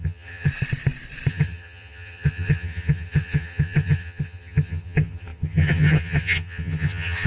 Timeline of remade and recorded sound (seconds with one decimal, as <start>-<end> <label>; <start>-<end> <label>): 0.0-0.5 remade; 0.5-1.3 recorded; 1.3-7.3 remade